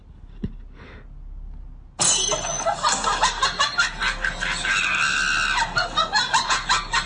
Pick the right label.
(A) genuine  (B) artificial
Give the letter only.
A